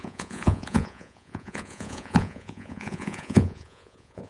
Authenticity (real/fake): fake